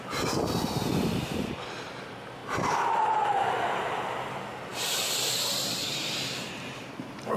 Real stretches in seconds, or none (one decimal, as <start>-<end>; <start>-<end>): 0.0-7.4